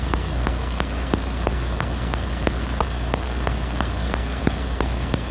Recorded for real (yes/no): no